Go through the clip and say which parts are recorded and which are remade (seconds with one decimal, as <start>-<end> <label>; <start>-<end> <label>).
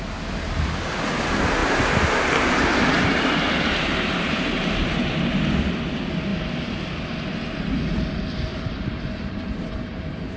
0.0-1.6 recorded; 1.6-5.0 remade; 5.0-8.5 recorded; 8.5-10.4 remade